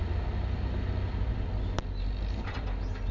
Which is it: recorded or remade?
recorded